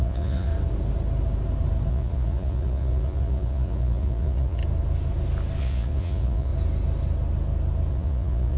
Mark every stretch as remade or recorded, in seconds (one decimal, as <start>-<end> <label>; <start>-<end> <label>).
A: 0.0-0.5 remade; 0.5-1.9 recorded; 1.9-4.6 remade; 4.6-5.6 recorded; 5.6-6.5 remade; 6.5-7.9 recorded; 7.9-8.6 remade